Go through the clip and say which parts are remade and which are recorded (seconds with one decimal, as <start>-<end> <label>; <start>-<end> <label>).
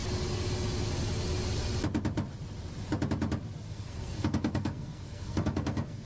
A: 0.0-3.7 recorded; 3.7-6.1 remade